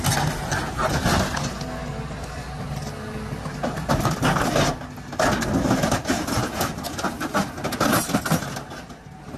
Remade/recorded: recorded